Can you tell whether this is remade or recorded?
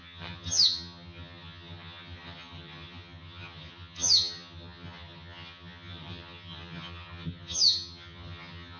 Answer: remade